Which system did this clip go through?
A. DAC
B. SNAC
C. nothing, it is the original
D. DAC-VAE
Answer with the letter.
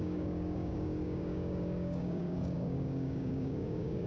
A